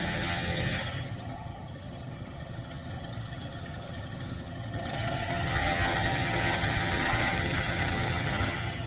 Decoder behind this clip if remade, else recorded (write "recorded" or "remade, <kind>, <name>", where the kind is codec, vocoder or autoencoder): remade, vocoder, HiFi-GAN